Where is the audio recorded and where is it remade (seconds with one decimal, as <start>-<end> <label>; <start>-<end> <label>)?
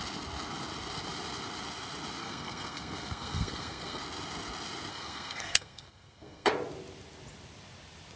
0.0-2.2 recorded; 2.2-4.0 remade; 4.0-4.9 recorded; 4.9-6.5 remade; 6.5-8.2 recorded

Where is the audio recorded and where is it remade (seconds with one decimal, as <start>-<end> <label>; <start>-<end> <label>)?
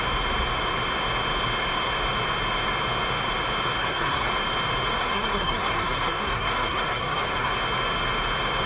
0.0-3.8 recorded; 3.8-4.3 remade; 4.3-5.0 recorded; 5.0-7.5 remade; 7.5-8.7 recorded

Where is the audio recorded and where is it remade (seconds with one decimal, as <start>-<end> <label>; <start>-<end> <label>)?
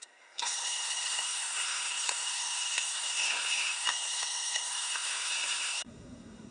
0.0-6.5 remade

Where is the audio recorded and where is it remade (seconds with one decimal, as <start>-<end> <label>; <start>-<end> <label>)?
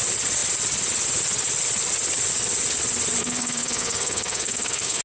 0.0-3.2 recorded; 3.2-5.0 remade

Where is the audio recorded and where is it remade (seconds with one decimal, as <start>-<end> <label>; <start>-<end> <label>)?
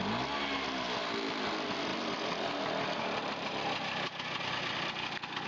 0.0-5.5 recorded